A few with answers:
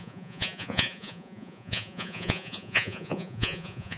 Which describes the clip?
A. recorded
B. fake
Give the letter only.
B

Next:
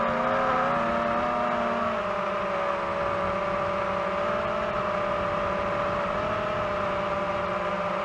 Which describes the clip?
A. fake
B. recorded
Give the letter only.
B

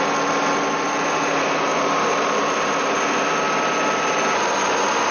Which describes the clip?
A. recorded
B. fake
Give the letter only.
A